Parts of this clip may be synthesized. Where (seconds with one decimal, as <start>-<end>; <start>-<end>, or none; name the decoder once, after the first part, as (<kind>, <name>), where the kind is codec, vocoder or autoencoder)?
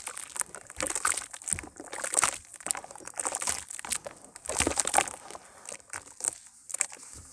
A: 6.6-7.3 (vocoder, BigVGAN v2)